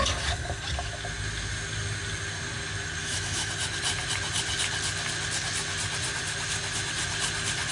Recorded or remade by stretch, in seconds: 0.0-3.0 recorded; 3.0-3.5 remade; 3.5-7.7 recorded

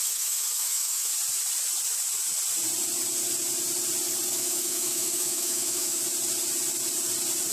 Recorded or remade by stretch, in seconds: 0.0-1.1 remade; 1.1-4.3 recorded; 4.3-6.0 remade; 6.0-7.5 recorded

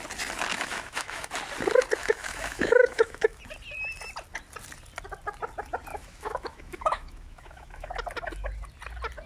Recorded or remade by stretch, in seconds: 0.0-0.5 recorded; 0.5-1.3 remade; 1.3-2.0 recorded; 2.0-3.4 remade; 3.4-5.9 recorded; 5.9-7.9 remade; 7.9-9.3 recorded

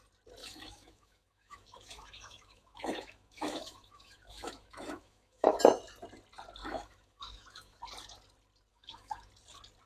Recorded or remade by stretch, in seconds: 0.0-0.4 recorded; 0.4-5.6 remade; 5.6-6.6 recorded; 6.6-7.8 remade; 7.8-8.7 recorded; 8.7-9.3 remade; 9.3-9.9 recorded

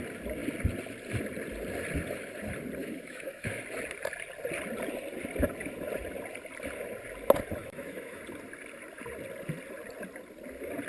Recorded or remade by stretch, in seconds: 0.0-2.8 recorded; 2.8-3.6 remade; 3.6-7.6 recorded; 7.6-8.2 remade; 8.2-10.9 recorded